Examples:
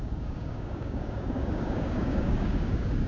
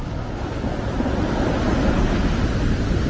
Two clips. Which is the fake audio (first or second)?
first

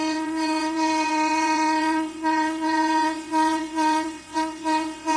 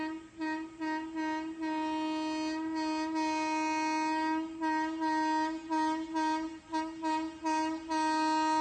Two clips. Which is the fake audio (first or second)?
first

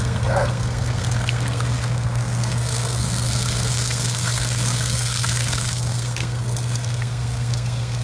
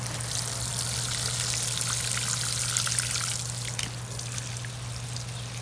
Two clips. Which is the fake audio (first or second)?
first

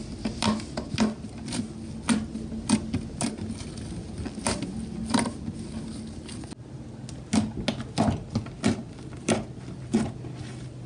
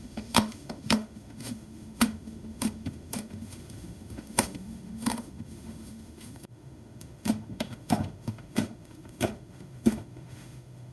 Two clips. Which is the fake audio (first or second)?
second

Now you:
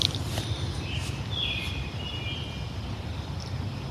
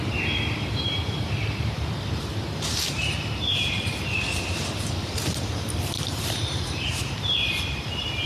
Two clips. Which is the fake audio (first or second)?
second